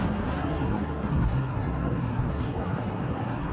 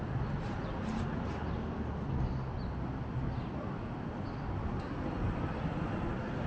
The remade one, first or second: first